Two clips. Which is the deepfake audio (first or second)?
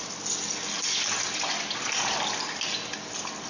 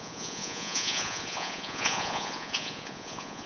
second